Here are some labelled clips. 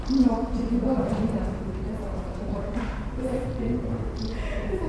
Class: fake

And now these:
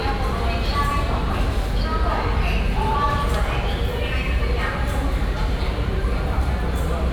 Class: real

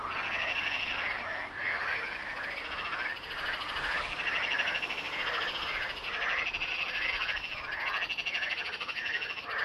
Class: real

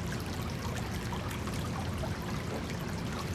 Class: real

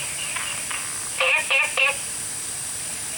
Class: fake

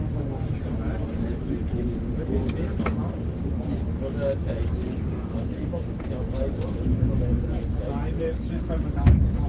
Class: real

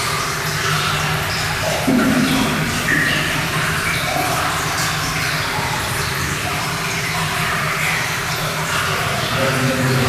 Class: real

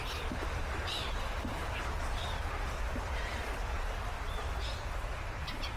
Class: fake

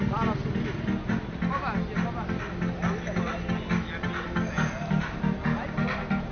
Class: real